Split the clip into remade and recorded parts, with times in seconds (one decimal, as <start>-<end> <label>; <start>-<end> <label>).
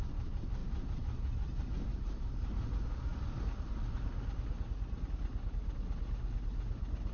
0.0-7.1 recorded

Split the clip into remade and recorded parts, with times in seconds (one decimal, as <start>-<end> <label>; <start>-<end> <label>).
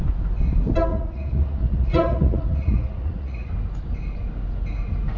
0.0-0.9 recorded; 0.9-3.5 remade; 3.5-5.2 recorded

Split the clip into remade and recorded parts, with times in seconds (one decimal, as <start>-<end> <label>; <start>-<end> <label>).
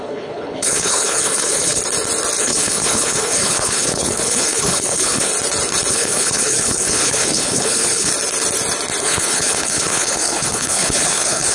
0.0-1.8 remade; 1.8-2.4 recorded; 2.4-5.3 remade; 5.3-5.9 recorded; 5.9-8.1 remade; 8.1-9.0 recorded; 9.0-11.5 remade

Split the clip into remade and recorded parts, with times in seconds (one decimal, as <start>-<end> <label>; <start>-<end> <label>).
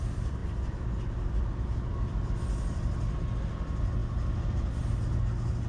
0.0-5.7 recorded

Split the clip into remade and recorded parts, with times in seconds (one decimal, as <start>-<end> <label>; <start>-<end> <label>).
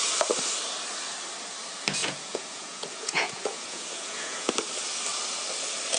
0.0-2.0 recorded; 2.0-4.5 remade; 4.5-6.0 recorded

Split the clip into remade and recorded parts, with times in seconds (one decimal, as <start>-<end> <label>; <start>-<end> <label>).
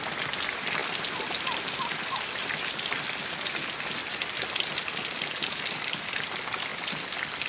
0.0-7.5 recorded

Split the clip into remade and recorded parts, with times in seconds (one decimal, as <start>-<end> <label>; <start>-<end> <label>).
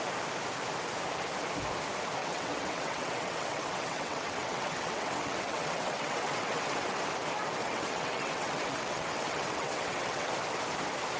0.0-2.2 recorded; 2.2-7.0 remade; 7.0-7.6 recorded; 7.6-10.3 remade; 10.3-11.2 recorded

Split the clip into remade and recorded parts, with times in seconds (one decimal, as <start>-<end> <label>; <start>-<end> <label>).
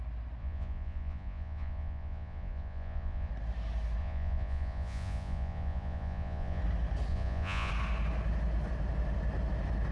0.0-0.4 recorded; 0.4-3.3 remade; 3.3-4.0 recorded; 4.0-6.6 remade; 6.6-7.1 recorded; 7.1-7.7 remade; 7.7-9.9 recorded